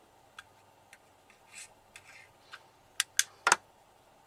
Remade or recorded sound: recorded